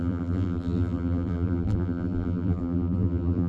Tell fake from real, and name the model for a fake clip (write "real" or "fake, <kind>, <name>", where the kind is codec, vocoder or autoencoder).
fake, vocoder, BigVGAN v2